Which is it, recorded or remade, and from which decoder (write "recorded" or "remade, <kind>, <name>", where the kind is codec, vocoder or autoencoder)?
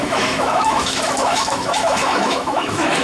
remade, autoencoder, DAC-VAE